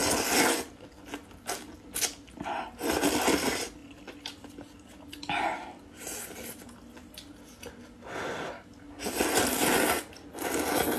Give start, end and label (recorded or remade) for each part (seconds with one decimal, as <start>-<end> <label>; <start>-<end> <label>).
0.0-11.0 recorded